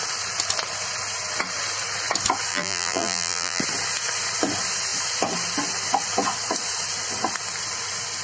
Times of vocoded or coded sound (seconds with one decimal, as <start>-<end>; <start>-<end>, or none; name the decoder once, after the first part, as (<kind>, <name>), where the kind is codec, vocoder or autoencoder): 2.5-3.6 (vocoder, BigVGAN v2)